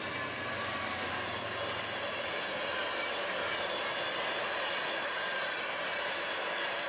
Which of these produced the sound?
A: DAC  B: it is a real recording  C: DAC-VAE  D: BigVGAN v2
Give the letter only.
B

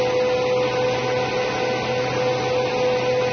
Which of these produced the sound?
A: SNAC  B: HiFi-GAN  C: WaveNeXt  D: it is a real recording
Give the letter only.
D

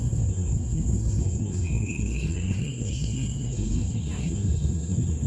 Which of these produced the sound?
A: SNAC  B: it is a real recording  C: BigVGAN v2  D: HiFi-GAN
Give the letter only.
A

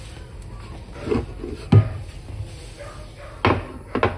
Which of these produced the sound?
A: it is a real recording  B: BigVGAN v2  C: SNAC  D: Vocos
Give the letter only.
A